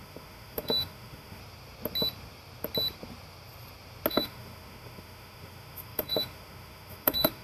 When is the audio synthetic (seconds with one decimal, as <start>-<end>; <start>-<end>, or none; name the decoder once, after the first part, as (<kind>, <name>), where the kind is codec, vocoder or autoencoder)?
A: 0.0-1.4 (autoencoder, DAC-VAE); 4.1-7.4